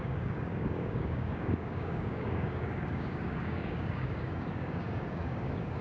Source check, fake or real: fake